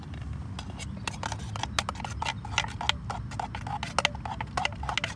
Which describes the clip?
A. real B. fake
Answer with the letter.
A